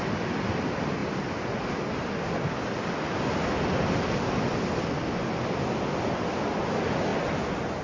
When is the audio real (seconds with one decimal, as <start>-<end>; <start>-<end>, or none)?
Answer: 0.0-7.8